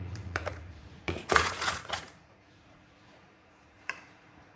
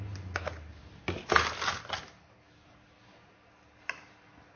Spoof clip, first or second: first